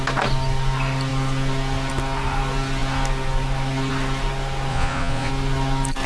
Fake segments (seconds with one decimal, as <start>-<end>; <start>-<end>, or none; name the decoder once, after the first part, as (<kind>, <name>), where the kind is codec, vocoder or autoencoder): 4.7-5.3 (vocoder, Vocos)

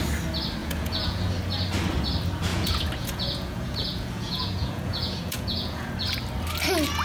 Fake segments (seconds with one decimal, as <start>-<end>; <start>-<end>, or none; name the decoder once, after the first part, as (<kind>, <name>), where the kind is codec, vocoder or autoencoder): 0.6-1.3 (vocoder, Vocos); 2.5-5.9

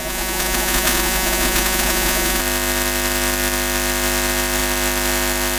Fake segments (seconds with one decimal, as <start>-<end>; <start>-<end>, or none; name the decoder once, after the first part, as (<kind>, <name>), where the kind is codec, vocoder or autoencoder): 0.0-2.4 (vocoder, Vocos)

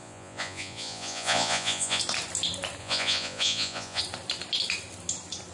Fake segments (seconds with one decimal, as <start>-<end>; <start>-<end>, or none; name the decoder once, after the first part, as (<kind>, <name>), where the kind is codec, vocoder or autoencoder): 0.0-2.0 (vocoder, Vocos); 2.8-4.0

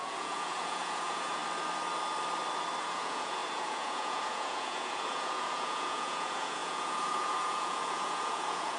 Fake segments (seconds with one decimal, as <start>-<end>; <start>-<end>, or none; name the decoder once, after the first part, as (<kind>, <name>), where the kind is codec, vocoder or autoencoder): 0.0-1.4 (vocoder, Vocos); 2.8-8.8

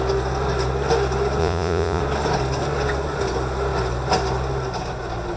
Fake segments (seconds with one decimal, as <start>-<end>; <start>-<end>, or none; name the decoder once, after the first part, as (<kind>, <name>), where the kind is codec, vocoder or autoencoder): 1.4-2.0 (vocoder, Vocos)